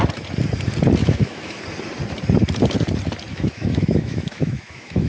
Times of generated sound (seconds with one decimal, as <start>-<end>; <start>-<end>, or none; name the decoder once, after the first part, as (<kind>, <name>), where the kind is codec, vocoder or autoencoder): 1.0-1.6 (autoencoder, DAC-VAE); 3.3-5.1